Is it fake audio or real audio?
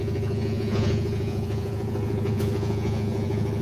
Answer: fake